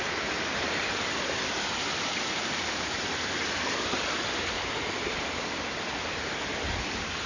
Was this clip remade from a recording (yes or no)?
yes